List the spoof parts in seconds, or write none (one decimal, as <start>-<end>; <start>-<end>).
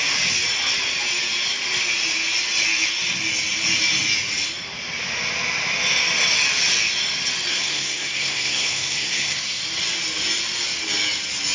7.5-9.6